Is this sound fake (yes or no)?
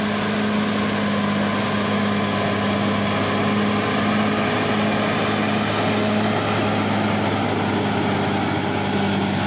no